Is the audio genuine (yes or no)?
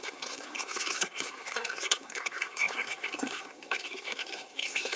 no